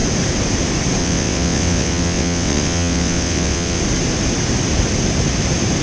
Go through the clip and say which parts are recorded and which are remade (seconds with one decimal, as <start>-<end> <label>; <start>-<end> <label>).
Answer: 0.0-1.0 recorded; 1.0-3.8 remade; 3.8-5.8 recorded

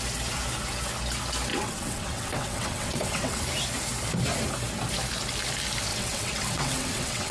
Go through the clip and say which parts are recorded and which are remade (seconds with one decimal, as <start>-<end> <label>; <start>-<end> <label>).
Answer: 0.0-1.5 recorded; 1.5-3.4 remade; 3.4-5.9 recorded; 5.9-7.3 remade

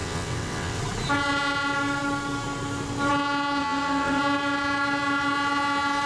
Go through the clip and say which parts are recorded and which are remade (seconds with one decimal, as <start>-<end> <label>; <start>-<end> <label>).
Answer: 0.0-0.8 remade; 0.8-3.6 recorded; 3.6-4.2 remade; 4.2-6.1 recorded

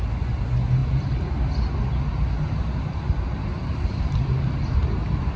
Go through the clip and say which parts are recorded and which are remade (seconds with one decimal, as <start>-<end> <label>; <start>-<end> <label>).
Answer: 0.0-5.4 recorded

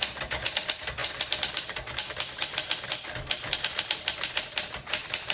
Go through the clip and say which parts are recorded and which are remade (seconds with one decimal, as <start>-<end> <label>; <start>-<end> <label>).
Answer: 0.0-5.3 recorded

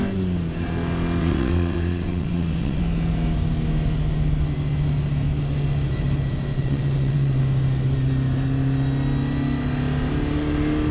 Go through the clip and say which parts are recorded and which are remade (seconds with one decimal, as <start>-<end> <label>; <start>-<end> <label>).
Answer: 0.0-1.2 recorded; 1.2-2.8 remade; 2.8-6.5 recorded; 6.5-7.4 remade; 7.4-10.9 recorded

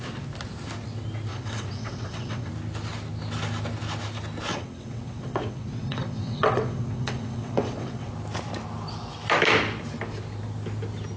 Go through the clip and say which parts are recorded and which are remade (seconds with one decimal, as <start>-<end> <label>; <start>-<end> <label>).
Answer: 0.0-1.3 recorded; 1.3-2.5 remade; 2.5-4.5 recorded; 4.5-8.1 remade; 8.1-11.2 recorded

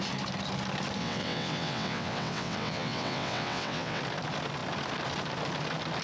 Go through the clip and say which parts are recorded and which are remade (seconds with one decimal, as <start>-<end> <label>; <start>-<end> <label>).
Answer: 0.0-1.0 recorded; 1.0-4.0 remade; 4.0-6.0 recorded